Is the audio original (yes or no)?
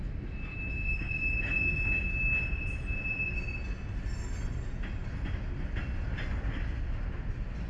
yes